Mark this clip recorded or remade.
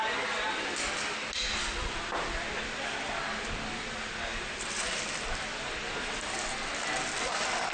recorded